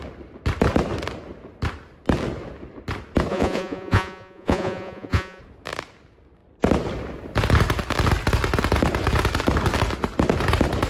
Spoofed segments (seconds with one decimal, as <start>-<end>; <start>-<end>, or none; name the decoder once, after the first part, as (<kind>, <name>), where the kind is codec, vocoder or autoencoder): 3.3-5.4 (vocoder, Vocos)